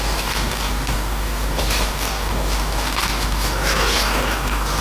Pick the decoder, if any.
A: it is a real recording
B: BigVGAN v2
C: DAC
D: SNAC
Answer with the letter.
C